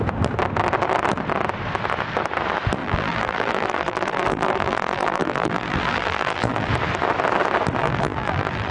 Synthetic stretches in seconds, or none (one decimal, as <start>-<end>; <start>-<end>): 2.8-6.7; 7.8-8.7